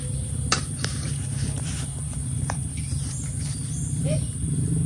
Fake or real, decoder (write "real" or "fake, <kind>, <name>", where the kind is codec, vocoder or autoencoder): fake, vocoder, BigVGAN v2